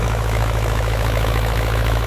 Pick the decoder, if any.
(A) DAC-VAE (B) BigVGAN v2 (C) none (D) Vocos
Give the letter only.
A